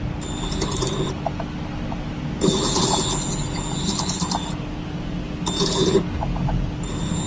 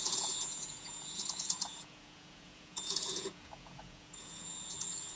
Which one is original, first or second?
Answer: first